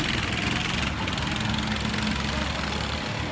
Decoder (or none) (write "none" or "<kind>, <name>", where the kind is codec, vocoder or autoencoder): none